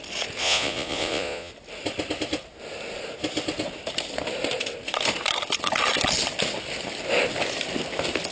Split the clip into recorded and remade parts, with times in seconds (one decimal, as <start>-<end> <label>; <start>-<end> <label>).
0.0-0.4 recorded; 0.4-1.5 remade; 1.5-8.3 recorded